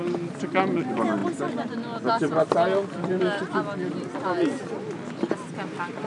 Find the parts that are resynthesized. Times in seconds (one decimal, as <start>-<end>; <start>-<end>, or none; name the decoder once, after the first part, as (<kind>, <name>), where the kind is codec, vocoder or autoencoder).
none